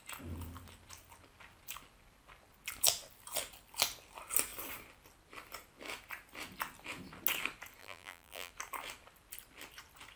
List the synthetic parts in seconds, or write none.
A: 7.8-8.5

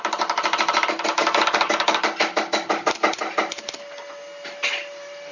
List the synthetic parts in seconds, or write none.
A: 1.2-2.0

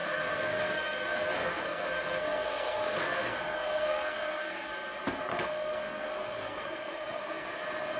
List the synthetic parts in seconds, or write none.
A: 0.0-4.7; 5.3-7.5